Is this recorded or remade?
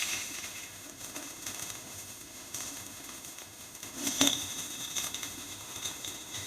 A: remade